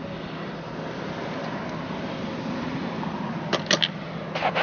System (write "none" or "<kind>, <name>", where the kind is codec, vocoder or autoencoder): none